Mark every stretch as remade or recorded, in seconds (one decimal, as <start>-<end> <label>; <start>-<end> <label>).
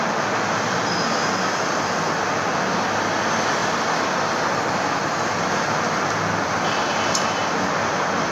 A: 0.0-8.3 recorded